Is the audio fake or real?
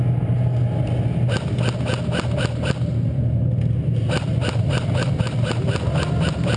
real